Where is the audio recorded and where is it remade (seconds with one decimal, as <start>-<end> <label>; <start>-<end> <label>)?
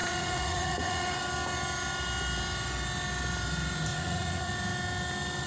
0.0-1.2 remade; 1.2-3.9 recorded; 3.9-4.5 remade; 4.5-5.5 recorded